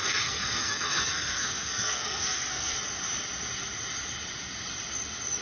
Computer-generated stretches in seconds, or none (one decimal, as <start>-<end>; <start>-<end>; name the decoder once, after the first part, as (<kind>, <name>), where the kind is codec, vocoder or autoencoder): 0.0-2.8 (codec, SNAC)